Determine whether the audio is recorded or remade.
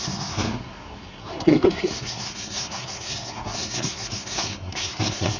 remade